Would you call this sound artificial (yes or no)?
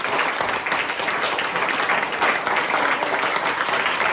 no